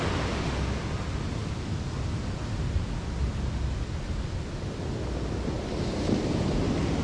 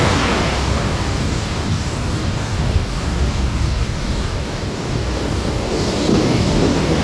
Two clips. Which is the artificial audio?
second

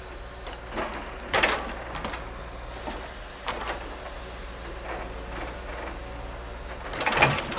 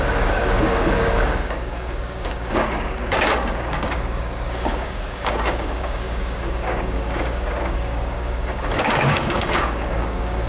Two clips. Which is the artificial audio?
second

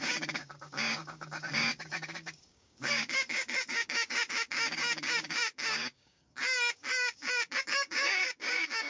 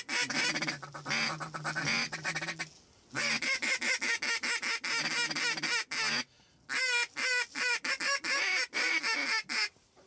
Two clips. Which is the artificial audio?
first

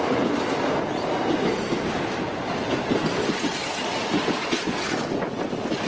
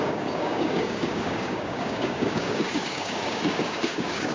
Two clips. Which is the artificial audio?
second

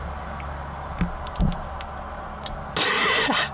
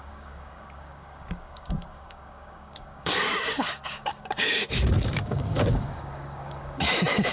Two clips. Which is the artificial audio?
second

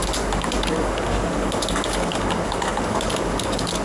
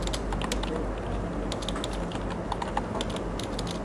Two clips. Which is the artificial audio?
first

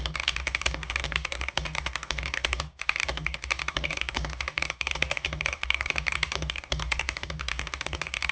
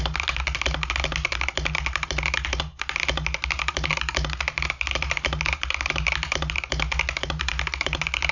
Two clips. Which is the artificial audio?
first